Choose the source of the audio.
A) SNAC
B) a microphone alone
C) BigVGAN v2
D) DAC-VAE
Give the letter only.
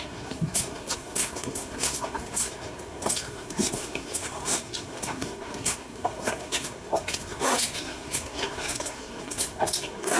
A